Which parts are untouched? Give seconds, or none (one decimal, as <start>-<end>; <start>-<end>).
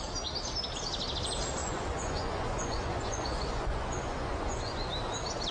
0.0-1.6; 4.9-5.5